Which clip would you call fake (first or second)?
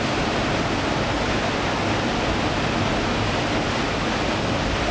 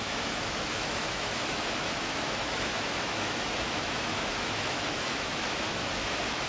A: second